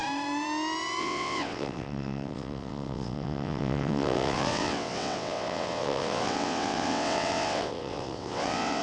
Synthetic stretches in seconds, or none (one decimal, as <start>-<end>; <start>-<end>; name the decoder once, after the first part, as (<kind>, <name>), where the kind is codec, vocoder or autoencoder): 1.0-8.8 (vocoder, WaveNeXt)